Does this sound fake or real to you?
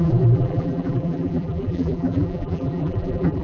fake